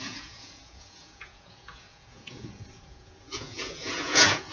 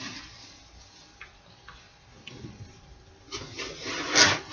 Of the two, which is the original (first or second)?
second